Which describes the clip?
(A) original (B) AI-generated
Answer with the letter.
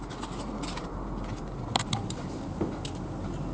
A